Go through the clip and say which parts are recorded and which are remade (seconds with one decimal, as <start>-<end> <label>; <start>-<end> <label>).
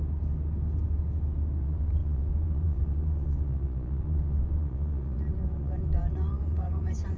0.0-1.6 recorded; 1.6-7.2 remade